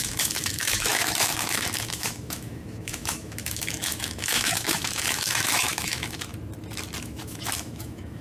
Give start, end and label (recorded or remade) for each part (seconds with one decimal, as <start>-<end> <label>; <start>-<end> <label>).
0.0-6.3 remade; 6.3-7.0 recorded; 7.0-8.2 remade

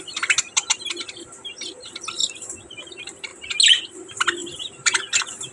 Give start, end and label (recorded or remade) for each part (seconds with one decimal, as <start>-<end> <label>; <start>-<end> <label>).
0.0-4.4 recorded; 4.4-5.0 remade; 5.0-5.5 recorded

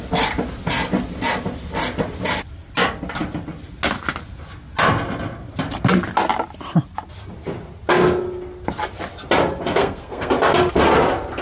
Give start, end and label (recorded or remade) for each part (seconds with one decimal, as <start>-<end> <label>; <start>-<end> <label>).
0.0-9.8 recorded; 9.8-10.3 remade; 10.3-11.4 recorded

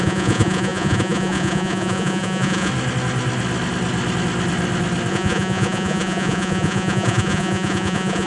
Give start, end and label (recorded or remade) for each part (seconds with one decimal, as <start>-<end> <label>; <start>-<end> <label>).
0.0-2.7 remade; 2.7-5.1 recorded; 5.1-8.3 remade